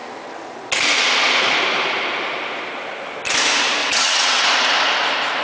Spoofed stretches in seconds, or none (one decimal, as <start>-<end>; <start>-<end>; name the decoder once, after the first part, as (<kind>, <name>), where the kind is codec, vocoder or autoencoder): 3.8-4.4 (vocoder, WaveNeXt)